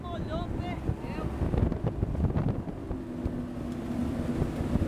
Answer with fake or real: real